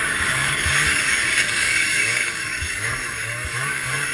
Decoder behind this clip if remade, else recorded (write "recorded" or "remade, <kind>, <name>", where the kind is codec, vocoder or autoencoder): remade, codec, DAC